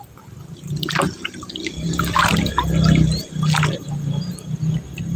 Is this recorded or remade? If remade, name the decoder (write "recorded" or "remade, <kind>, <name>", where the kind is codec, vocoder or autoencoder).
recorded